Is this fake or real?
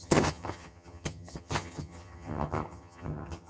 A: fake